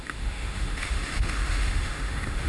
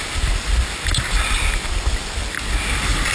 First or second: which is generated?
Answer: first